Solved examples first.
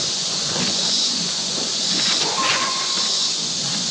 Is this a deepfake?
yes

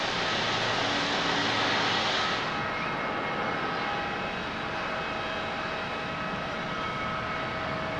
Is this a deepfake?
no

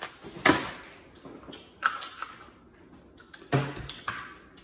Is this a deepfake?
no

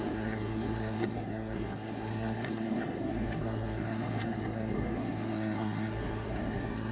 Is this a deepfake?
yes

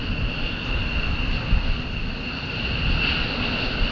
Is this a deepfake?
no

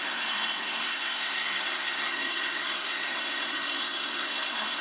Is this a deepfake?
yes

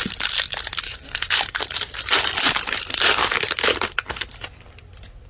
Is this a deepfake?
no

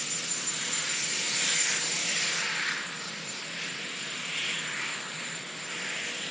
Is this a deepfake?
yes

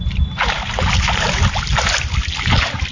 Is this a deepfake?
no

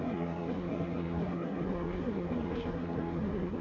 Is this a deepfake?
yes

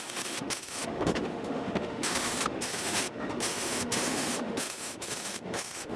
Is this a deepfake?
yes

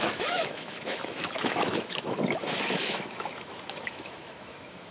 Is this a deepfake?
yes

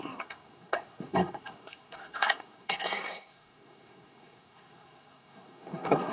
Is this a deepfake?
yes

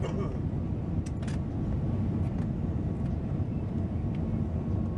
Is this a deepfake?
no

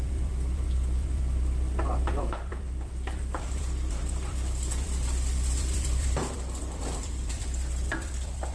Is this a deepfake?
yes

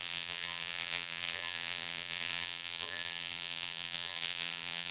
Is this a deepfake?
yes